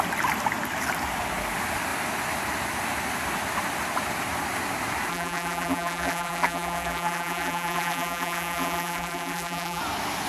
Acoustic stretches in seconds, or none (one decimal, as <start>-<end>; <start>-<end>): 0.0-5.1; 9.8-10.3